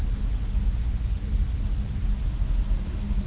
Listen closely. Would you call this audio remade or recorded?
recorded